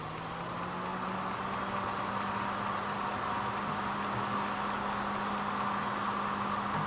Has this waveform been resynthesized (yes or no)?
no